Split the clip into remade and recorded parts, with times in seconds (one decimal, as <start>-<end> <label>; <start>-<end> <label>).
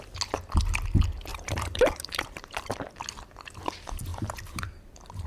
0.0-1.3 recorded; 1.3-2.9 remade; 2.9-4.1 recorded; 4.1-5.3 remade